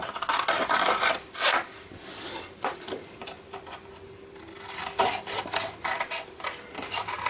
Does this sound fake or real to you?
real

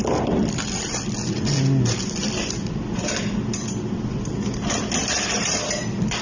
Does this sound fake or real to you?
real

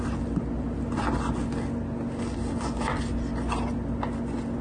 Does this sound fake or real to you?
real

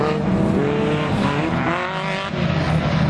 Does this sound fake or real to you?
real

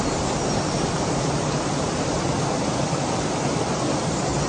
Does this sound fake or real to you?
fake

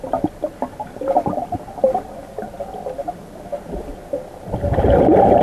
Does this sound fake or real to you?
real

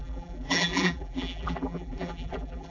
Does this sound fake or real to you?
fake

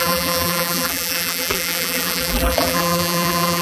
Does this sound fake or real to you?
fake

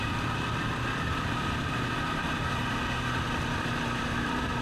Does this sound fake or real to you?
fake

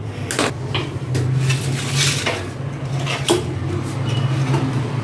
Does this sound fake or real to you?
real